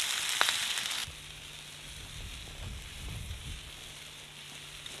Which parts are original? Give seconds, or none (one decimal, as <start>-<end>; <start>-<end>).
0.0-5.0